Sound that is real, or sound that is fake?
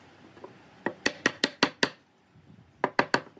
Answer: real